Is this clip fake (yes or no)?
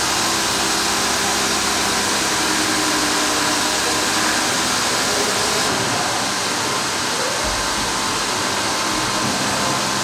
no